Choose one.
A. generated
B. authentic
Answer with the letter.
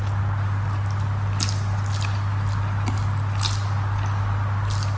B